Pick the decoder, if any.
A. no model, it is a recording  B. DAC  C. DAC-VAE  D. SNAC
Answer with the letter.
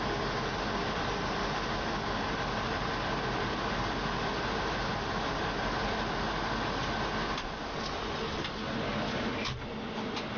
A